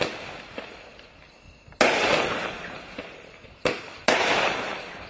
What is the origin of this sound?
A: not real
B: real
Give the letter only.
B